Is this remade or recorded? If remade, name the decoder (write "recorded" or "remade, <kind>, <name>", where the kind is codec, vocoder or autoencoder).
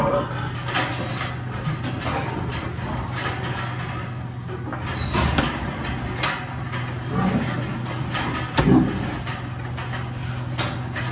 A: recorded